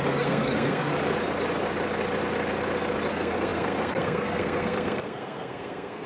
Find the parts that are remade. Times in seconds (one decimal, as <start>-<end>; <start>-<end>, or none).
0.0-0.9; 3.1-6.1